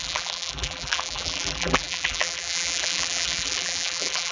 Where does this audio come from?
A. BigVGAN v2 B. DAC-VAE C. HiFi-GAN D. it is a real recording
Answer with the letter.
A